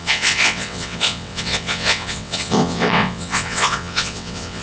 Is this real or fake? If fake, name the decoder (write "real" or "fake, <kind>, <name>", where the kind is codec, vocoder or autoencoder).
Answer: fake, vocoder, WaveNeXt